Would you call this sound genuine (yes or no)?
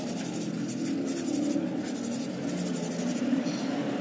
yes